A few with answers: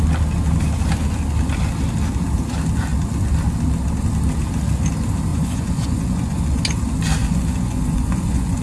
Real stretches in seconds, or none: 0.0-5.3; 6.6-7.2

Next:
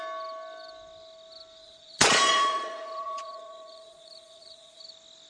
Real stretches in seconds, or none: 0.0-1.6; 4.8-5.3

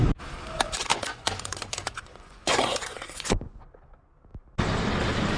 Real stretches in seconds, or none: 0.0-0.9; 3.6-5.4

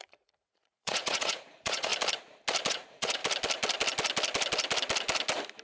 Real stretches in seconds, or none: 1.9-2.7; 3.2-5.6

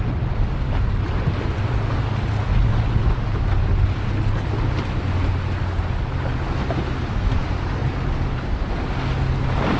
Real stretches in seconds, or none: 0.0-9.8